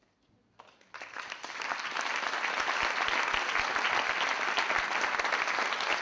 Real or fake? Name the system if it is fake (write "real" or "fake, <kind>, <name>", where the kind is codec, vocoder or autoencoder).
real